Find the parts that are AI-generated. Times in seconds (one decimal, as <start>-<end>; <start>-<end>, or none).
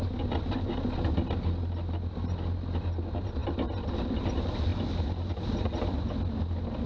none